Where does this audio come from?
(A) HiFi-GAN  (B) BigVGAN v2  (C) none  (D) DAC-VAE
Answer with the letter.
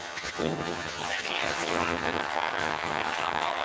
A